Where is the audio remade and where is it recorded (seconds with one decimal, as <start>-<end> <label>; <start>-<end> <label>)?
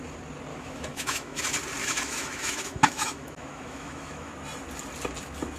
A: 0.0-0.5 recorded; 0.5-1.4 remade; 1.4-1.8 recorded; 1.8-4.3 remade; 4.3-5.6 recorded